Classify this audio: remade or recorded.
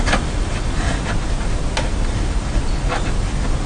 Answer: recorded